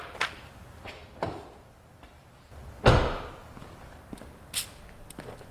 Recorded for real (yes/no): yes